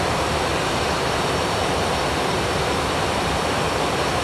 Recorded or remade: remade